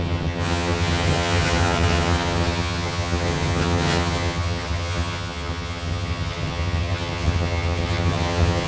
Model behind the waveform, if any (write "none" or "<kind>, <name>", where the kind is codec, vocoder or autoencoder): vocoder, HiFi-GAN